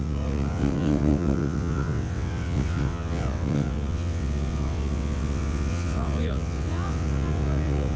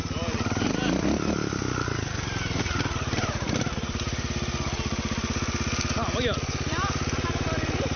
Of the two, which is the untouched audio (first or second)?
second